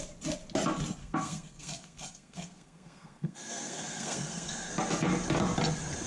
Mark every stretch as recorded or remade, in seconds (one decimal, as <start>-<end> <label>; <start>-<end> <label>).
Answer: 0.0-1.0 recorded; 1.0-4.7 remade; 4.7-6.1 recorded